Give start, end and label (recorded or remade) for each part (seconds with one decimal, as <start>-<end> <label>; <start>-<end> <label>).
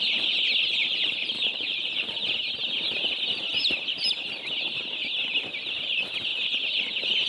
0.0-0.8 recorded; 0.8-2.1 remade; 2.1-7.3 recorded